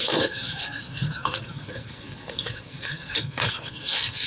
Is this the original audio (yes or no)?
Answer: no